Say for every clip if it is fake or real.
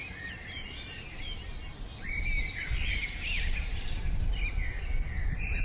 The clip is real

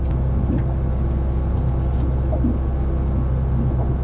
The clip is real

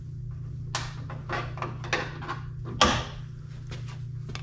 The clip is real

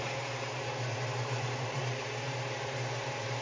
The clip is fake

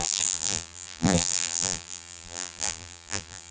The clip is fake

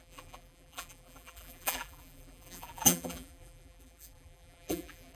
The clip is fake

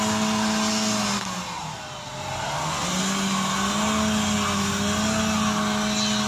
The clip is real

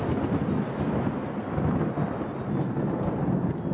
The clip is real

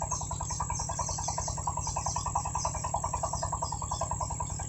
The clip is real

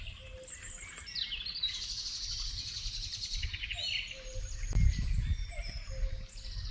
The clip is real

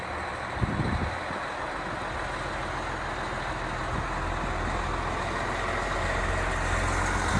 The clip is real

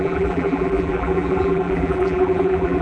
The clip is fake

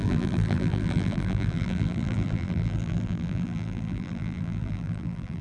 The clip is fake